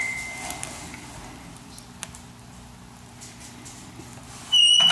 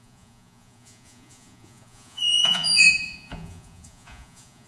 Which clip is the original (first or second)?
first